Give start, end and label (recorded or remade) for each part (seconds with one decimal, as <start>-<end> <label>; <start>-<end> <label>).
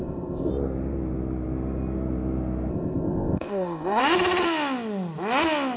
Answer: 0.0-0.5 remade; 0.5-2.7 recorded; 2.7-4.0 remade; 4.0-5.8 recorded